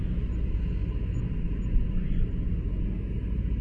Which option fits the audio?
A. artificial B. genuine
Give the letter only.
B